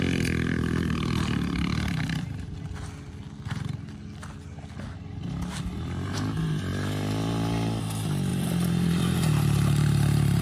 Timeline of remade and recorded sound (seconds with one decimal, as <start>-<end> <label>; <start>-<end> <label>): 0.0-8.3 recorded; 8.3-10.4 remade